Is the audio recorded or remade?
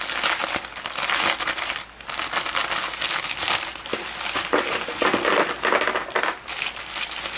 recorded